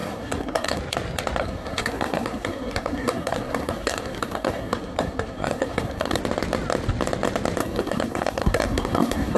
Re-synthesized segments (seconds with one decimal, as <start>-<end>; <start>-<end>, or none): 0.0-0.8; 1.4-6.2; 7.6-9.4